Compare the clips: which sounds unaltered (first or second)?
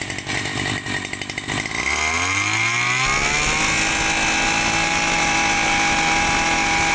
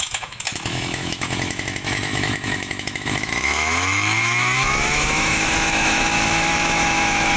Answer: first